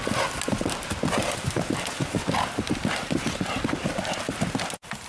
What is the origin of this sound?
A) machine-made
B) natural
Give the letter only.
B